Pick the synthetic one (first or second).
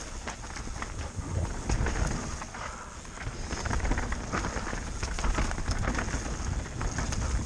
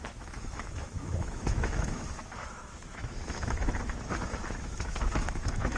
second